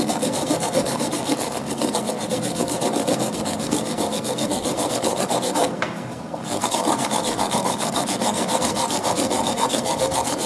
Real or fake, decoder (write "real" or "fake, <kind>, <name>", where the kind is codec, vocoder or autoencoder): fake, codec, SNAC